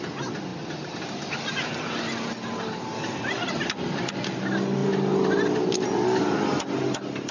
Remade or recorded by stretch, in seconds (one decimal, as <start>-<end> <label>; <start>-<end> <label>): 0.0-7.3 recorded